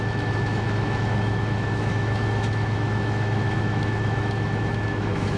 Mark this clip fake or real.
fake